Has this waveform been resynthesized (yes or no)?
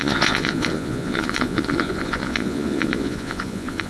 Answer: yes